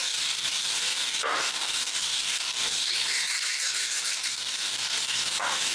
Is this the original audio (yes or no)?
no